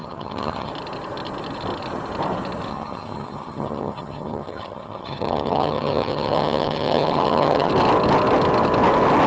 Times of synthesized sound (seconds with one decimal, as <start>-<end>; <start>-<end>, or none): 0.0-0.7; 2.7-7.7